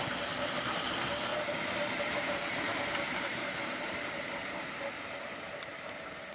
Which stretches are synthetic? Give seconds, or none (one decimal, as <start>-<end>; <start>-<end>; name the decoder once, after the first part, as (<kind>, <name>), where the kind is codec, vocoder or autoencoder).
0.0-6.3 (vocoder, BigVGAN v2)